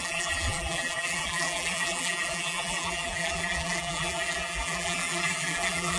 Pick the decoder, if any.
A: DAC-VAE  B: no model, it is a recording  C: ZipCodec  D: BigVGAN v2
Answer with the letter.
D